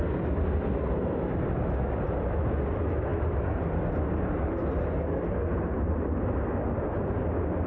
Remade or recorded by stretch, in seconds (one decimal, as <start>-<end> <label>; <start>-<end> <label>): 0.0-7.7 recorded